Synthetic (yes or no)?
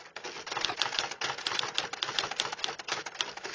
yes